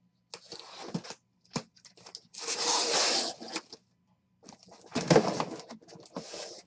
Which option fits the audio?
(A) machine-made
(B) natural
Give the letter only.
B